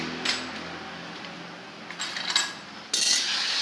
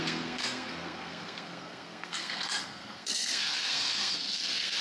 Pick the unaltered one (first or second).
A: first